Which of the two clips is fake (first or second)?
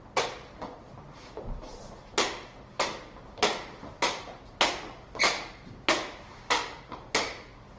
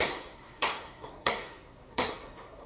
second